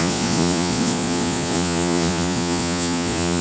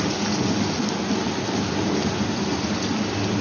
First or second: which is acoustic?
second